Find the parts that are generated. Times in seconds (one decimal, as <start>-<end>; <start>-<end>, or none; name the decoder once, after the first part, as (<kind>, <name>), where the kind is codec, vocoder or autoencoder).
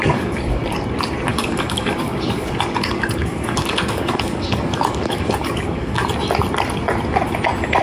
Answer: 0.0-0.6 (codec, DAC); 1.3-6.0